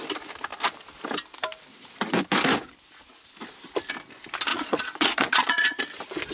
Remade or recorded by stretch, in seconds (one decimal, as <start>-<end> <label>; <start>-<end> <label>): 0.0-4.5 recorded; 4.5-5.8 remade; 5.8-6.3 recorded